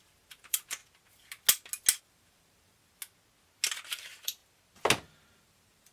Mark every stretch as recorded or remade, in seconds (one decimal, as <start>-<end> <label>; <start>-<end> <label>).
0.0-0.8 remade; 0.8-2.0 recorded; 2.0-3.0 remade; 3.0-3.9 recorded; 3.9-4.4 remade; 4.4-5.4 recorded; 5.4-5.9 remade